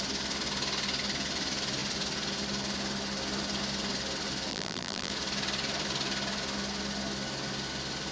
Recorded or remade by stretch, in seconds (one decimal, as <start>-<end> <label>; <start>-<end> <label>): 0.0-4.5 recorded; 4.5-5.1 remade; 5.1-8.1 recorded